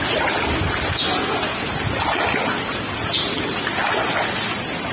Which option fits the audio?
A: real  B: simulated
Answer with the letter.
A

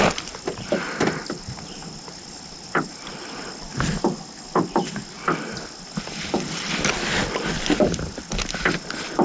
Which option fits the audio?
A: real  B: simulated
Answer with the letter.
A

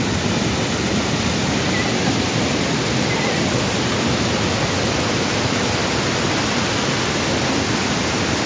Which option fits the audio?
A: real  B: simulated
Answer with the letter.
A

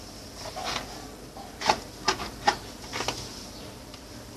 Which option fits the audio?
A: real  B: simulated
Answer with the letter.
B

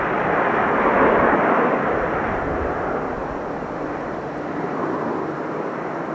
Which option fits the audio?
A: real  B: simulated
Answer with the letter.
B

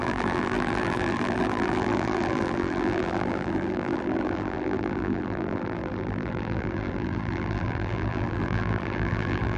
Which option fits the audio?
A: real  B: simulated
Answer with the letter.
B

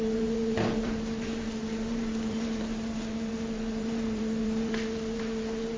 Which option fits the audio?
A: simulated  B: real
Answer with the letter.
A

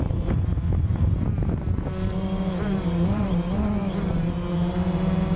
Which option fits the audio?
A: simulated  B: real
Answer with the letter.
A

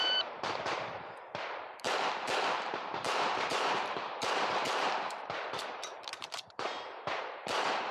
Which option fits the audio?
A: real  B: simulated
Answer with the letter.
B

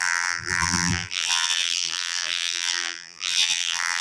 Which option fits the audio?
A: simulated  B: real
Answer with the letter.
A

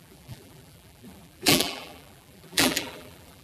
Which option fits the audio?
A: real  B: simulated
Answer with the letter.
B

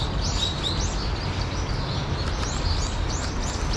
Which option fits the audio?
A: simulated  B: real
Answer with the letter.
B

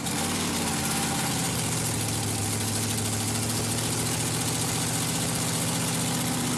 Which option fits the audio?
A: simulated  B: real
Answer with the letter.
B